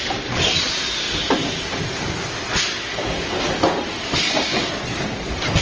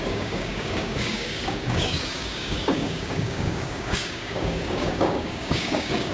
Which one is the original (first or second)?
first